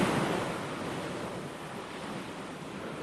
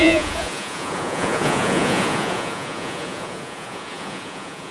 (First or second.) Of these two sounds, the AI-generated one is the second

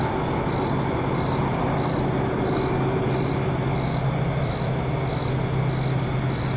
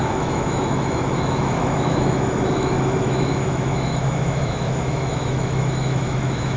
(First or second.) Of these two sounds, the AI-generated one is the second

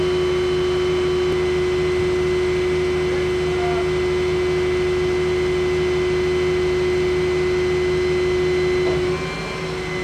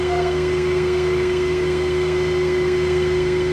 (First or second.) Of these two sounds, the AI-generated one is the second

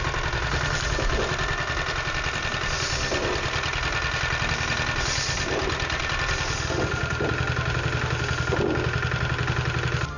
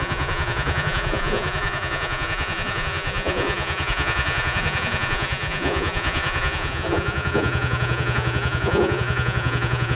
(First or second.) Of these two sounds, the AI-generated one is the second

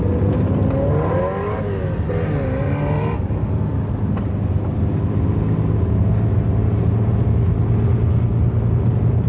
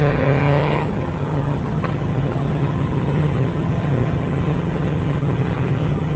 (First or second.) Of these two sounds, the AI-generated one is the second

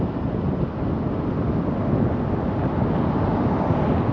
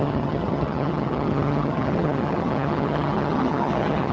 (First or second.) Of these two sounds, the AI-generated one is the second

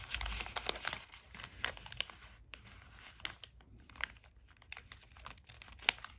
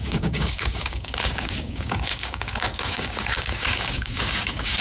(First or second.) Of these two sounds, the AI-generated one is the second